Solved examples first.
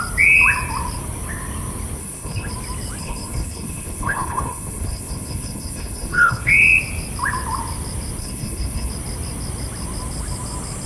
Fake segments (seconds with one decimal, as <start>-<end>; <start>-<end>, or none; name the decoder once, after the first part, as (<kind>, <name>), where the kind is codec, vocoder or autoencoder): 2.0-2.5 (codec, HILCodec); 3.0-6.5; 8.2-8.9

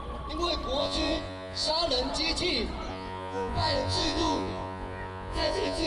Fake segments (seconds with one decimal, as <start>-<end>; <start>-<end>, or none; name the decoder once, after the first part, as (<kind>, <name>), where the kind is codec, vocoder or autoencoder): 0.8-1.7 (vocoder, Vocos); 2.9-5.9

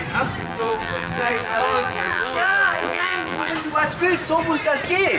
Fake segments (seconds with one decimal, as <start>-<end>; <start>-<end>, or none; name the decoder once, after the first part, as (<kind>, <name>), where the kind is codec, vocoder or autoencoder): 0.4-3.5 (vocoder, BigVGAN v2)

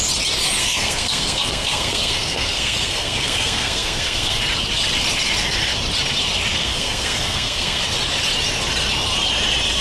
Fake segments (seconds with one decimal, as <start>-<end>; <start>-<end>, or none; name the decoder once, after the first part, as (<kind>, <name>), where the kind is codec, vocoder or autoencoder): 0.6-4.4 (codec, SNAC); 6.6-7.8

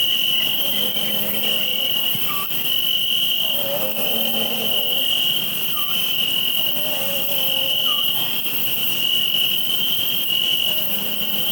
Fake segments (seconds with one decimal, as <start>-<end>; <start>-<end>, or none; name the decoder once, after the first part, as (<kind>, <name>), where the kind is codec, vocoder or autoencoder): none